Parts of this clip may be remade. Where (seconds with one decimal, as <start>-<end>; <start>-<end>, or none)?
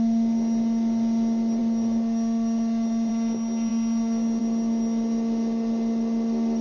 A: none